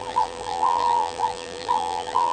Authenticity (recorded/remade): remade